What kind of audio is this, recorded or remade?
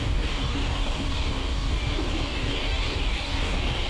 remade